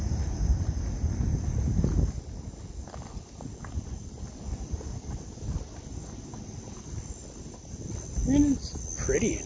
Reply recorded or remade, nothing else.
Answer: recorded